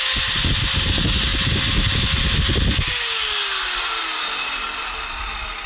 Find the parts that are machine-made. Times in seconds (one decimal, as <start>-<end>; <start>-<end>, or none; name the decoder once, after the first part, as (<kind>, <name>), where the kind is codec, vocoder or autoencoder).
none